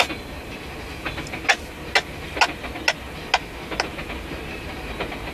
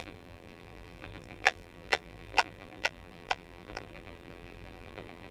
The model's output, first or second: second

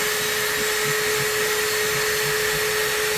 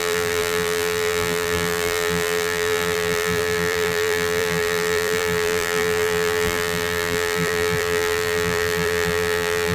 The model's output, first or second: second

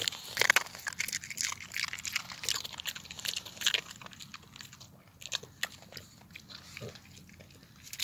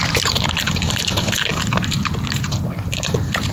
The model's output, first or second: second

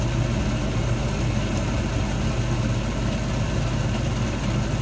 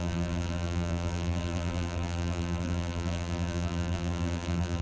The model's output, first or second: second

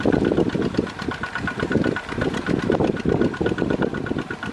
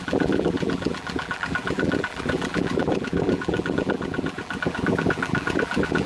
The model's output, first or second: second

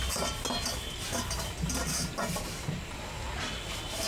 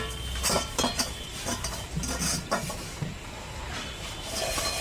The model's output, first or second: second